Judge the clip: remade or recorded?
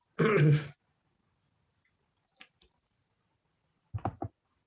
recorded